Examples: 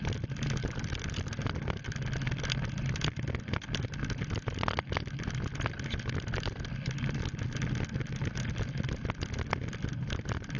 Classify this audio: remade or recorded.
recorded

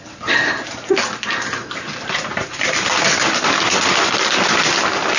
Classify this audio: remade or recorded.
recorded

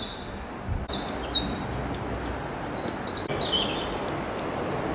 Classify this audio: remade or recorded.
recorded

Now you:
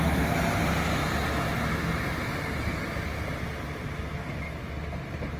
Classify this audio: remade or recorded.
recorded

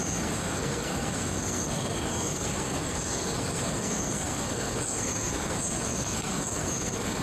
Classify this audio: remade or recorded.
remade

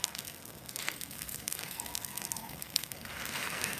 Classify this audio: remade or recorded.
remade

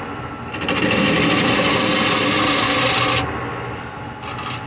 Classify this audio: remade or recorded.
recorded